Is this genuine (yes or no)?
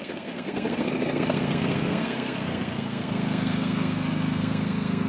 no